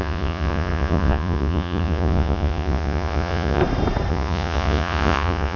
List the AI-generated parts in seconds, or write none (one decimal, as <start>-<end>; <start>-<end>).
0.0-3.6; 4.1-5.6